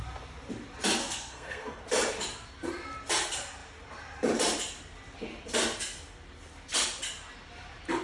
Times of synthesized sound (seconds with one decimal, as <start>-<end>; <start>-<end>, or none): 1.0-1.8

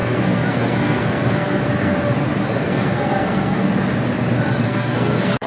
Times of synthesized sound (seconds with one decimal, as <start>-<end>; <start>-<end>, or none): 0.0-1.9; 2.6-3.6; 4.6-5.5

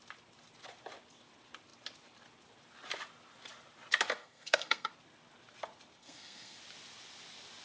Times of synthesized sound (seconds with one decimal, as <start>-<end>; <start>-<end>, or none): 4.2-4.9; 6.0-6.6